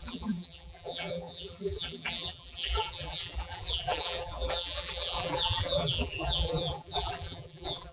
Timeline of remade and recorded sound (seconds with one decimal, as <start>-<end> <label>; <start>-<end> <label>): 0.0-7.9 remade